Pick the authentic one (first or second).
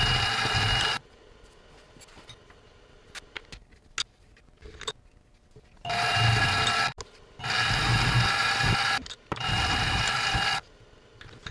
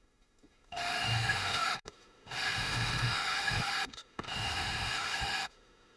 first